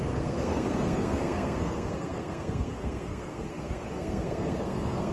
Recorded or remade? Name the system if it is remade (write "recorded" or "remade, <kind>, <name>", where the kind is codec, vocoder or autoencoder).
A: remade, codec, SNAC